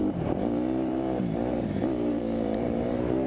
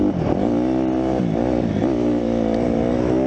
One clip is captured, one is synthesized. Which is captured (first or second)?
second